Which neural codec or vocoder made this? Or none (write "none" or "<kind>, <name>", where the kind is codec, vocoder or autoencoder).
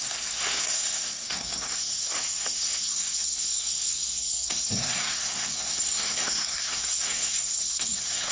codec, SNAC